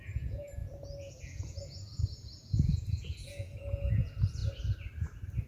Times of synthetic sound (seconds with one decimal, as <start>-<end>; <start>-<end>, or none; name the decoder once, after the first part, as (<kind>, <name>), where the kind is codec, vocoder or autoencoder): 0.0-4.4 (vocoder, Vocos)